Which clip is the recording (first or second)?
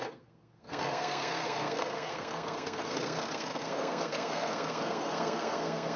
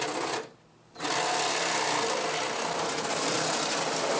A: second